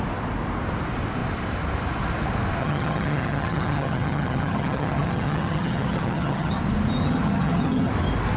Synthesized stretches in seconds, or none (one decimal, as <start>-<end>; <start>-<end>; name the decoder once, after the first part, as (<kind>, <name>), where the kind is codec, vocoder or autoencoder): 2.6-6.6 (vocoder, HiFi-GAN); 7.0-7.9